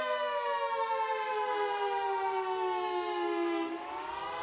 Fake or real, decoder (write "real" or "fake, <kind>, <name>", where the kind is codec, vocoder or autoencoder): fake, codec, DAC